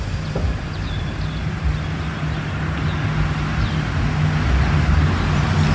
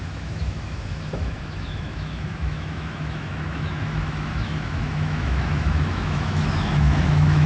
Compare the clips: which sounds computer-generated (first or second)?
second